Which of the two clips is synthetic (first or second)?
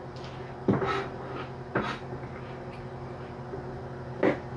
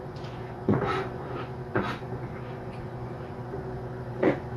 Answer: second